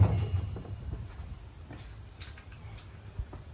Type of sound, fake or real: fake